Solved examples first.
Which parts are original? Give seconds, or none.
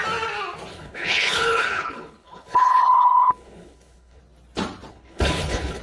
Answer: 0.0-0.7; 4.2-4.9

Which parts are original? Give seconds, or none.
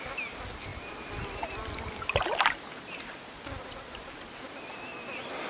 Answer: 0.0-5.5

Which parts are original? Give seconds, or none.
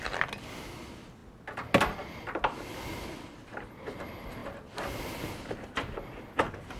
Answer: 0.0-6.8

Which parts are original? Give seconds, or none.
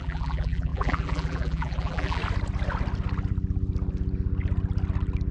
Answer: 2.2-5.3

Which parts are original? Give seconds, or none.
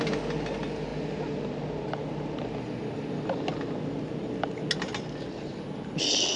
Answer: 0.0-6.4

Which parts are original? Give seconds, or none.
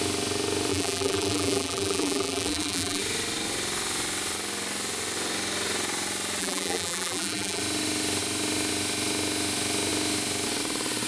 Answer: 0.0-0.7; 3.0-6.4; 7.6-11.1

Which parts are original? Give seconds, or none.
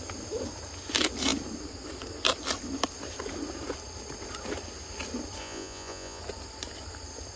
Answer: 0.0-5.4; 6.2-7.4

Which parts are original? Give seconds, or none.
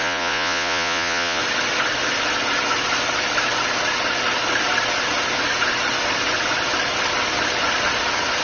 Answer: 1.4-8.4